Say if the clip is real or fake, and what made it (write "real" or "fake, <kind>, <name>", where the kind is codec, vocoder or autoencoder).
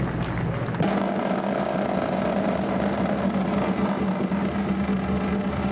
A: real